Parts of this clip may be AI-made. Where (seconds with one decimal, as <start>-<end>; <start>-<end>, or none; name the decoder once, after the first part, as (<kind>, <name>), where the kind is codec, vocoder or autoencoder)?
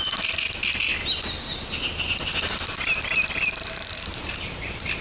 none